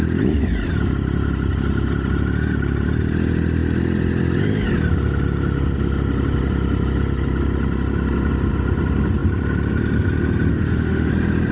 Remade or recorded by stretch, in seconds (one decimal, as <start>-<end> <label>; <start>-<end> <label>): 0.0-10.5 recorded; 10.5-11.1 remade; 11.1-11.5 recorded